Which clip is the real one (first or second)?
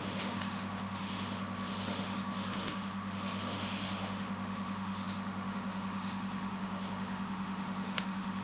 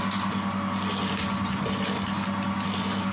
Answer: second